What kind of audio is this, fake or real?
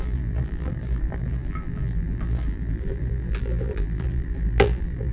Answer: fake